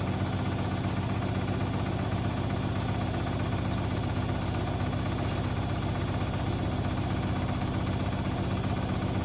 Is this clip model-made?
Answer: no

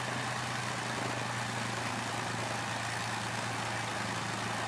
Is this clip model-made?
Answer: no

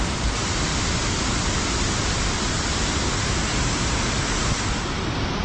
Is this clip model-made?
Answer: no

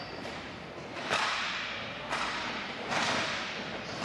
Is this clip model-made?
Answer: yes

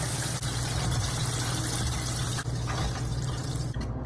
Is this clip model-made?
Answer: no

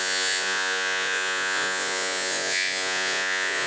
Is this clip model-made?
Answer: yes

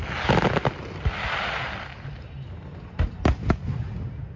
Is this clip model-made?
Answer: no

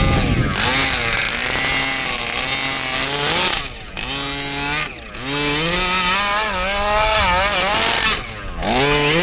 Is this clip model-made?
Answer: no